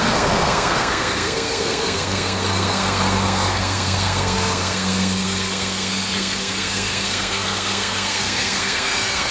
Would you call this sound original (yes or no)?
no